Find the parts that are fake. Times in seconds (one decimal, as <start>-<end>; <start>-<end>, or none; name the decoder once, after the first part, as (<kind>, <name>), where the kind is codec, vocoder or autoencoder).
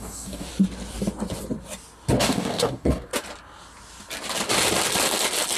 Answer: 0.0-0.5 (codec, DAC); 2.2-3.1